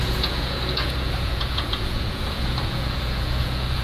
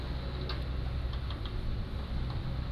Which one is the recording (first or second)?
second